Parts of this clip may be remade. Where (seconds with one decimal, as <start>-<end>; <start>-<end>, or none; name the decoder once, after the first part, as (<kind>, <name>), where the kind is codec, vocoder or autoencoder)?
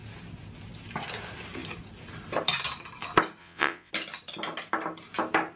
3.4-3.9 (vocoder, WaveNeXt)